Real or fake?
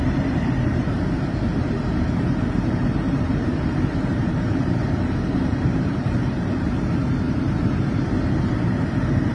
fake